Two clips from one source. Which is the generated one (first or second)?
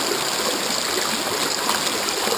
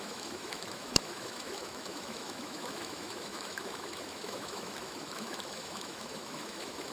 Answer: second